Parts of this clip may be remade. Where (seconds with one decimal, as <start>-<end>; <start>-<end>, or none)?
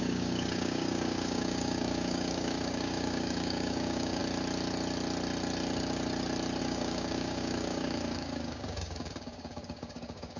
0.0-4.2; 6.6-10.4